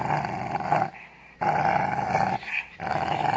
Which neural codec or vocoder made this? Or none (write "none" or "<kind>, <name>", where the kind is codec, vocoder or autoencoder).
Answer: none